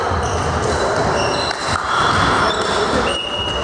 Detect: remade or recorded recorded